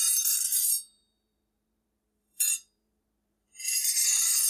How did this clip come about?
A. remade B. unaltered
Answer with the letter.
A